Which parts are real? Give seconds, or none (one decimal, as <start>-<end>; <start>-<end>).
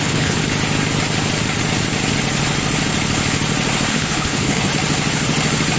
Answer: 0.4-3.9; 4.7-5.8